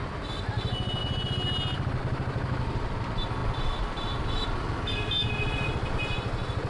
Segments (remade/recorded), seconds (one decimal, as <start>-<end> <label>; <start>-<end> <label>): 0.0-6.7 recorded